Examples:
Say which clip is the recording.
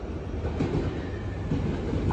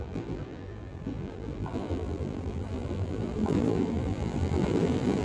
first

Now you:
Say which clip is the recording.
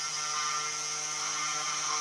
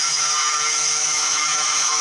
first